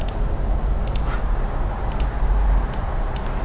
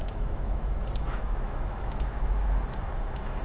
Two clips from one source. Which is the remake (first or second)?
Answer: second